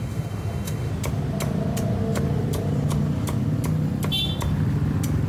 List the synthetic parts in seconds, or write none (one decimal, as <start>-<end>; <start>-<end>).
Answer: 0.0-0.9